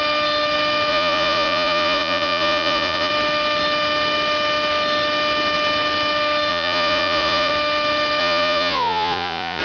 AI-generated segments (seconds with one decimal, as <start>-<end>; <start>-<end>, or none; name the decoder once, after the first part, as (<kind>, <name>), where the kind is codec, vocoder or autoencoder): 0.9-3.1 (vocoder, Vocos); 6.5-7.5; 8.2-9.6